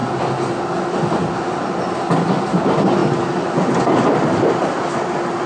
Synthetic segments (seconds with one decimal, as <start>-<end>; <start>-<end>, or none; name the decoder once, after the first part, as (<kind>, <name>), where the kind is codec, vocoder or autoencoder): none